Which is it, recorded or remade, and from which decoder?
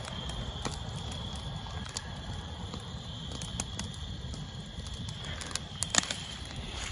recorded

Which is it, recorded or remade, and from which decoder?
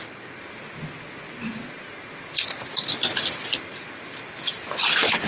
recorded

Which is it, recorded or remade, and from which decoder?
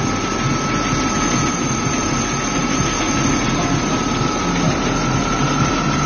recorded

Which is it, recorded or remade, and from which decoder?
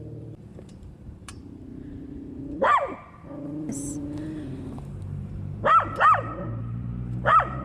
remade, vocoder, BigVGAN v2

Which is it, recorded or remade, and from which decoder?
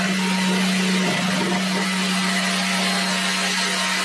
recorded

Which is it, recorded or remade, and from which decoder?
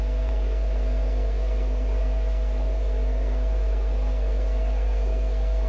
remade, codec, SNAC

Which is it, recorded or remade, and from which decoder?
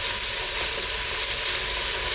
recorded